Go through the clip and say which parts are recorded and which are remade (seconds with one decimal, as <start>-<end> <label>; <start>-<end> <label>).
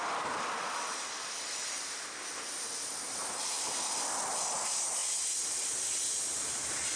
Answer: 0.0-7.0 recorded